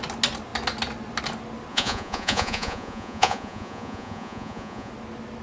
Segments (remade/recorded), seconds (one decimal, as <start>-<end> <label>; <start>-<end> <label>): 0.0-1.7 recorded; 1.7-4.9 remade; 4.9-5.4 recorded